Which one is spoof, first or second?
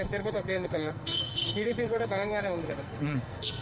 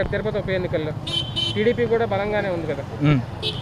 first